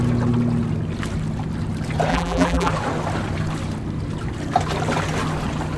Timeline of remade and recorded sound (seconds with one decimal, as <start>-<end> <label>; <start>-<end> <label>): 0.0-2.1 recorded; 2.1-2.7 remade; 2.7-5.8 recorded

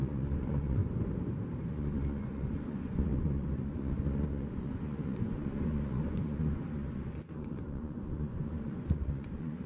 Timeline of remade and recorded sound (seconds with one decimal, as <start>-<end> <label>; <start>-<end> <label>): 0.0-0.8 remade; 0.8-1.7 recorded; 1.7-9.7 remade

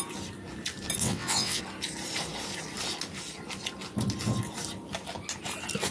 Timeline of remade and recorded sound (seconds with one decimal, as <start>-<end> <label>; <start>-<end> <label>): 0.0-1.0 recorded; 1.0-1.6 remade; 1.6-5.9 recorded